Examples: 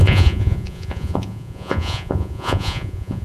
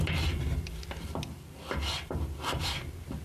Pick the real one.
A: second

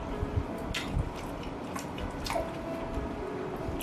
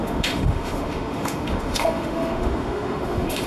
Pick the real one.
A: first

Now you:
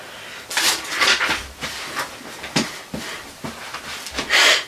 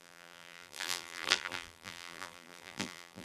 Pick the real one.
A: first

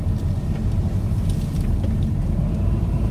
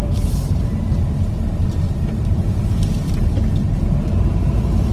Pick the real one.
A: first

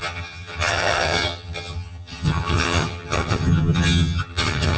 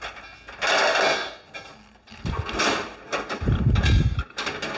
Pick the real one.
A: second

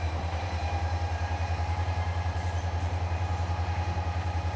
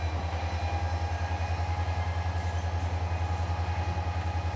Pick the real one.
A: second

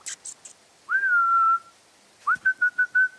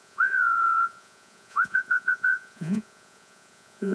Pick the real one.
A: first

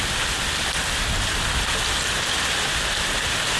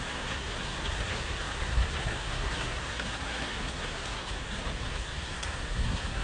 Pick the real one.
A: first